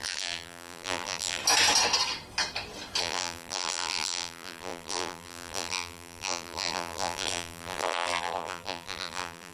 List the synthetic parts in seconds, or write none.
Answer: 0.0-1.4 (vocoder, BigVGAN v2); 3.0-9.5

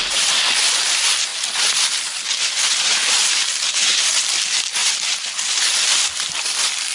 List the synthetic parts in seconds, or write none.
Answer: none

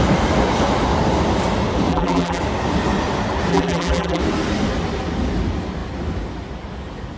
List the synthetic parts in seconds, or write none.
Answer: 1.9-2.4 (vocoder, BigVGAN v2); 3.5-4.2

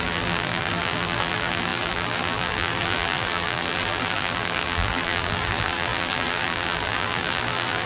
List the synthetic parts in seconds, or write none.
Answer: 0.0-7.9 (vocoder, BigVGAN v2)

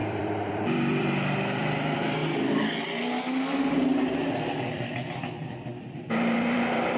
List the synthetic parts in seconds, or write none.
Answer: 0.0-2.2 (vocoder, BigVGAN v2); 4.6-7.0

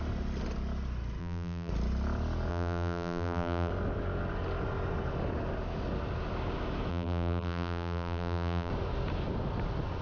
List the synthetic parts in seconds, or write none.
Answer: 1.2-1.7 (vocoder, BigVGAN v2); 2.5-3.7; 6.9-8.7

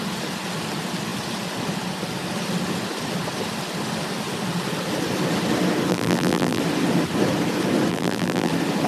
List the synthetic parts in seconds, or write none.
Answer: 5.9-6.6 (vocoder, BigVGAN v2); 7.9-8.5